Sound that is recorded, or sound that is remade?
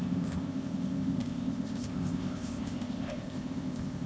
remade